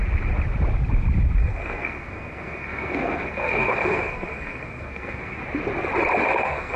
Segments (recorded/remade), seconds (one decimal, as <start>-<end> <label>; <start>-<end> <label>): 0.0-1.4 recorded; 1.4-5.4 remade; 5.4-6.3 recorded; 6.3-6.8 remade